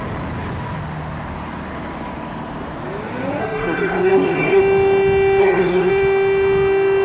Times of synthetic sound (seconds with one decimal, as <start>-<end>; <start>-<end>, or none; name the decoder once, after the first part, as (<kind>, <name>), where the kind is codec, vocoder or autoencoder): 3.4-4.6 (codec, SNAC); 5.4-5.9